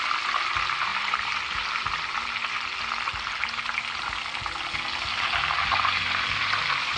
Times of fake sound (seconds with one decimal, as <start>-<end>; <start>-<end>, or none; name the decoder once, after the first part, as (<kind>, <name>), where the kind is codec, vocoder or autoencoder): none